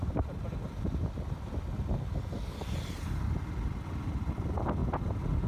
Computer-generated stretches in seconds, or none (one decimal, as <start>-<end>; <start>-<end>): none